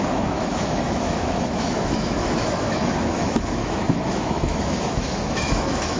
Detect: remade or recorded remade